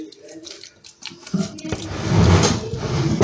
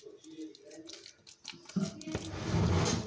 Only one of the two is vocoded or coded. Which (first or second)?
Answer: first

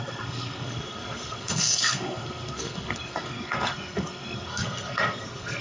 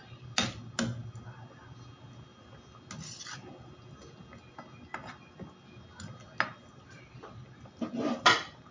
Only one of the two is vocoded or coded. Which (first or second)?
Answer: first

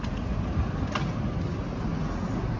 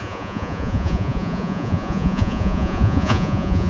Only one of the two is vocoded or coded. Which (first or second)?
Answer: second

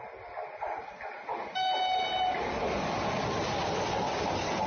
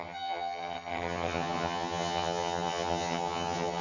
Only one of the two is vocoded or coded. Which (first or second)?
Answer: second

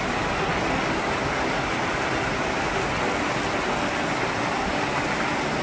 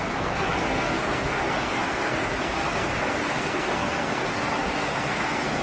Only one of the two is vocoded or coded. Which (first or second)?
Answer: second